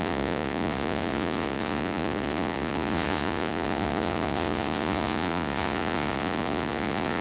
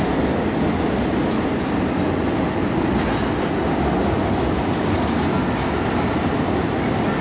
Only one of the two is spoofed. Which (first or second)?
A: first